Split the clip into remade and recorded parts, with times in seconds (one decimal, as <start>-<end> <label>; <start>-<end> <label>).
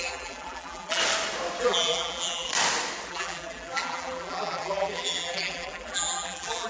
0.0-1.0 remade; 1.0-1.6 recorded; 1.6-2.5 remade; 2.5-3.1 recorded; 3.1-6.7 remade